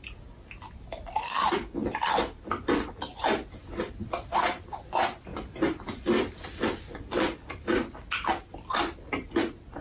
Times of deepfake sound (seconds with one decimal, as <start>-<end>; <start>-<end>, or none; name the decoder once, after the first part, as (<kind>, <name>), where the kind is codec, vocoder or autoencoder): none